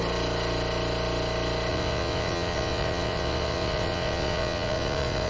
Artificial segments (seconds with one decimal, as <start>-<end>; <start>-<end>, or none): 1.7-5.3